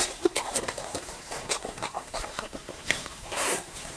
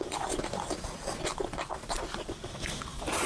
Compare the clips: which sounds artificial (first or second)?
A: first